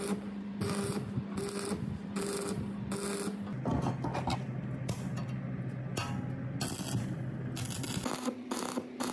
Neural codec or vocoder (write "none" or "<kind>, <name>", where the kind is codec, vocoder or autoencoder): none